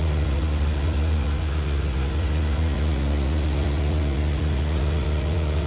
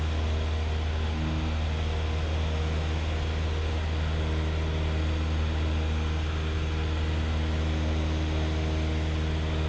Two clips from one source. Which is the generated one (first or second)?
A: first